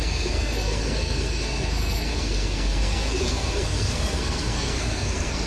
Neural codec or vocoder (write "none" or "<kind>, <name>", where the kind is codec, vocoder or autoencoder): codec, SNAC